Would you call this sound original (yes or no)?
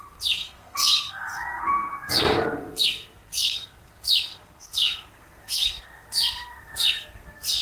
no